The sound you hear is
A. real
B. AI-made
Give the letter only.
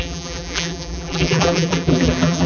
B